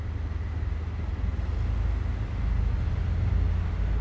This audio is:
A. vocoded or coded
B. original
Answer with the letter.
B